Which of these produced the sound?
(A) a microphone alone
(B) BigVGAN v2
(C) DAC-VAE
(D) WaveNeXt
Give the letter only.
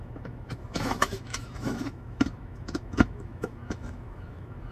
C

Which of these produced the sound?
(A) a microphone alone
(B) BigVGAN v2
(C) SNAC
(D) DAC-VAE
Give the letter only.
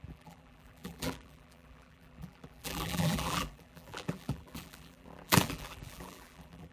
B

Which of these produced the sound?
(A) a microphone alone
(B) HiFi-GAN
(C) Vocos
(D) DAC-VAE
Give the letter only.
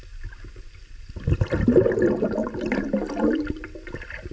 A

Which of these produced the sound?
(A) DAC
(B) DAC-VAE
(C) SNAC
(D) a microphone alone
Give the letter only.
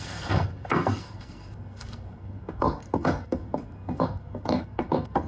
C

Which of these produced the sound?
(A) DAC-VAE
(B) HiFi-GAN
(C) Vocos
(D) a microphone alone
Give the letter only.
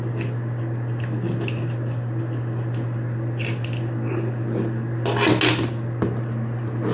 D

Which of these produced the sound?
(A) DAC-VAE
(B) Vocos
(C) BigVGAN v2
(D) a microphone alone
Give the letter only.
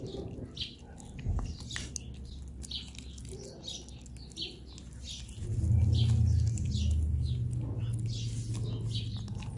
D